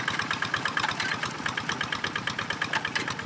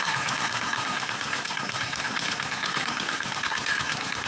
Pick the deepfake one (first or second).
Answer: second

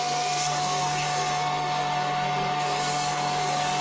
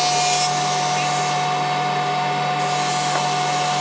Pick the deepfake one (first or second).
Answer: first